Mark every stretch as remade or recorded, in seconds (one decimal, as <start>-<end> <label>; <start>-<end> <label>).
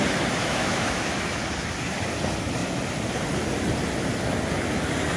0.0-0.4 recorded; 0.4-1.4 remade; 1.4-5.2 recorded